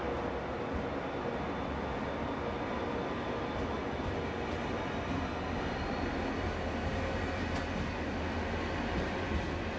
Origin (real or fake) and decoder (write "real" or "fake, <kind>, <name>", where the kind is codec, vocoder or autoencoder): real